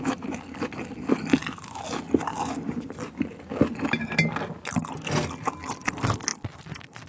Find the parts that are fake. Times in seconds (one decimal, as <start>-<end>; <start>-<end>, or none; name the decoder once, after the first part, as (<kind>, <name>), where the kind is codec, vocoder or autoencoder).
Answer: 1.4-2.1 (vocoder, BigVGAN v2); 6.3-7.1